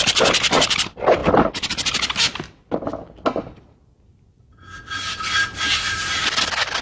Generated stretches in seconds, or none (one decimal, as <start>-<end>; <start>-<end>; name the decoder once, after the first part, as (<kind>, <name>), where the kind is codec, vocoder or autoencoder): none